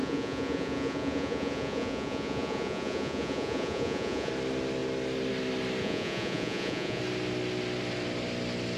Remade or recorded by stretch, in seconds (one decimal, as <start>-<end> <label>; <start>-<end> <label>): 0.0-4.3 remade; 4.3-5.8 recorded; 5.8-7.0 remade; 7.0-8.8 recorded